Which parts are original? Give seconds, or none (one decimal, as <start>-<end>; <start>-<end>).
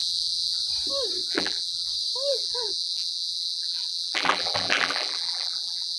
0.6-1.2; 1.9-2.3